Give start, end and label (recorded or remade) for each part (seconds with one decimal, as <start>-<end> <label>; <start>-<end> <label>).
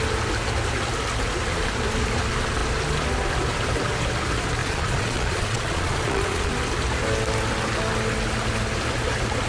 0.0-4.6 recorded; 4.6-6.5 remade; 6.5-9.5 recorded